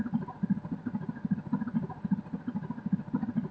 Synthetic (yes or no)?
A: no